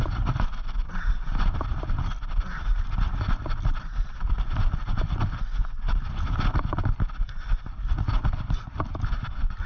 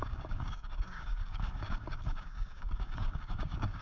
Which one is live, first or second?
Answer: first